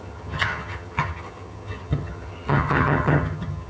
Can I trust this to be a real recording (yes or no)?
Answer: no